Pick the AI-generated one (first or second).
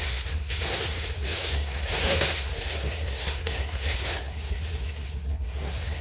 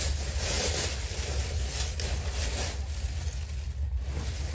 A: first